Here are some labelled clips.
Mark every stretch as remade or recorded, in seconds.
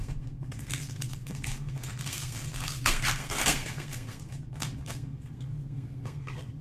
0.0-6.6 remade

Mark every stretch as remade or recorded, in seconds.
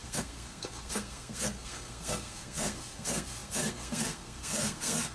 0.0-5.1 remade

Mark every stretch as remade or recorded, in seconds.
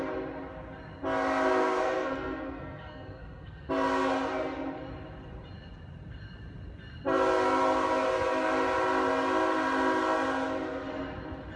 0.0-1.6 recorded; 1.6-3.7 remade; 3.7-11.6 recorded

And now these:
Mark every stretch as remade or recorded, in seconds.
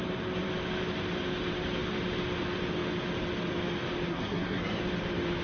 0.0-4.1 recorded; 4.1-4.8 remade; 4.8-5.4 recorded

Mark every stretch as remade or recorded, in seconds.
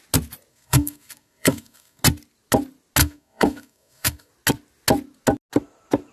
0.0-0.5 recorded; 0.5-2.0 remade; 2.0-3.0 recorded; 3.0-4.3 remade; 4.3-6.1 recorded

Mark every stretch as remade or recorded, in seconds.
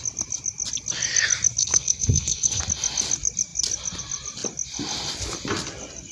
0.0-1.6 recorded; 1.6-2.6 remade; 2.6-6.1 recorded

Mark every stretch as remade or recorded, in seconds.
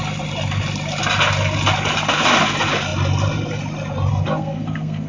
0.0-4.1 recorded; 4.1-5.1 remade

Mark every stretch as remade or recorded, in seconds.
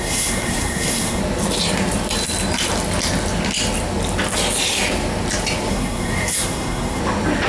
0.0-1.2 remade; 1.2-5.7 recorded; 5.7-7.0 remade; 7.0-7.5 recorded